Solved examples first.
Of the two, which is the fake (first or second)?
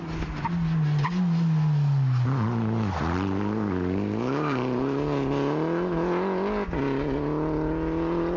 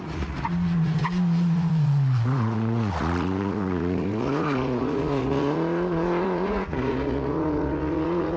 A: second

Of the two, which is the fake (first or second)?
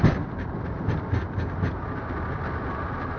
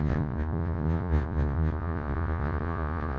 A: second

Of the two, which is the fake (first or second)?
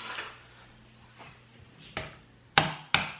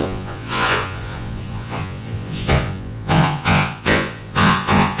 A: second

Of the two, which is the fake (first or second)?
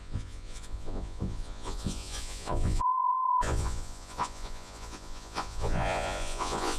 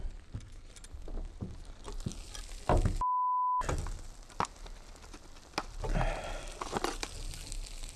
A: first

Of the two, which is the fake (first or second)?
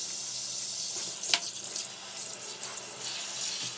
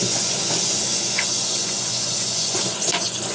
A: second